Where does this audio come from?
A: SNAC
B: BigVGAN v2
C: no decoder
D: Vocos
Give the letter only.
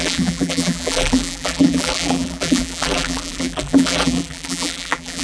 B